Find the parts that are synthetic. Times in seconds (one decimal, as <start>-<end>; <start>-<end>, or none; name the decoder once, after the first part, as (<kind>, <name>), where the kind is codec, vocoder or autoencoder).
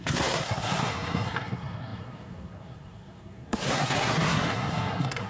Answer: 0.0-5.3 (codec, SNAC)